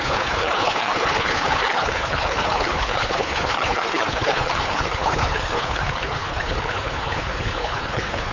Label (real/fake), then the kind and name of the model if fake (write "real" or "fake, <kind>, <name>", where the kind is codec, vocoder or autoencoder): fake, codec, HILCodec